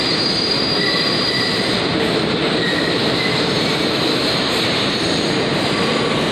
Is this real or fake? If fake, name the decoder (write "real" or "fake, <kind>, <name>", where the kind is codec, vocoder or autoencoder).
fake, vocoder, BigVGAN v2